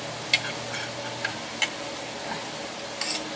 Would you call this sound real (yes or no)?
yes